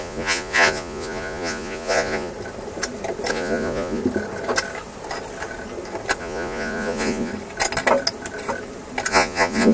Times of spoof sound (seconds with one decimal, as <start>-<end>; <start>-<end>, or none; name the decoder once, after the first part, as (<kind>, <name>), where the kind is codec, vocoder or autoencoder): 0.0-2.3 (vocoder, Vocos); 3.3-4.0; 6.2-7.3; 9.1-9.7